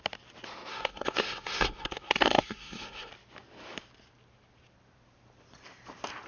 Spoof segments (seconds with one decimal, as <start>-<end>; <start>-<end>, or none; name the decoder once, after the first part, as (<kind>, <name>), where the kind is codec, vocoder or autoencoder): 0.7-3.1 (codec, SNAC)